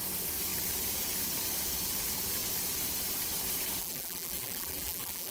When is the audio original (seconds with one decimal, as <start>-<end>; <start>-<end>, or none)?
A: 0.0-3.8